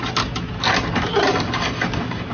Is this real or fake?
real